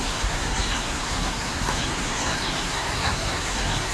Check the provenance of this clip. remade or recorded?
remade